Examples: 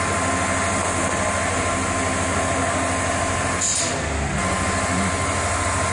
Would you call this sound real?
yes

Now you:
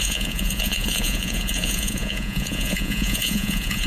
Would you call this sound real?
no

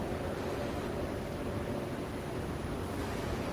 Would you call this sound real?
no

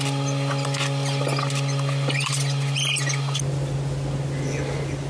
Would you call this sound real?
yes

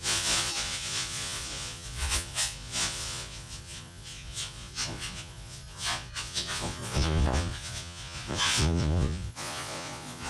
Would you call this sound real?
no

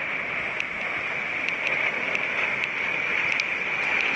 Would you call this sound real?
yes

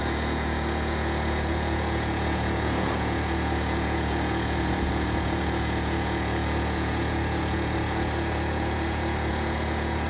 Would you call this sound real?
no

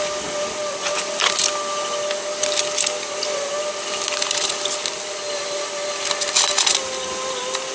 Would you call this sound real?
yes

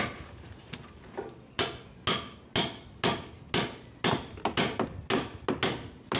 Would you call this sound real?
yes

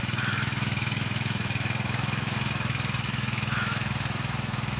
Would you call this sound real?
no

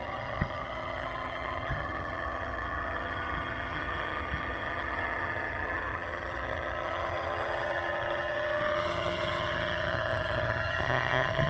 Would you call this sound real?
no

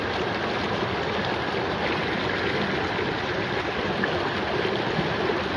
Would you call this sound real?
yes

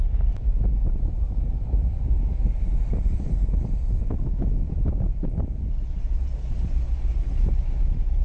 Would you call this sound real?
yes